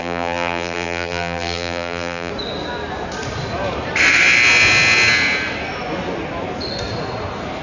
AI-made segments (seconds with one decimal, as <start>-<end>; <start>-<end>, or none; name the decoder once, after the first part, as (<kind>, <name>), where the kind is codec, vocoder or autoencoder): 0.0-2.3 (vocoder, BigVGAN v2)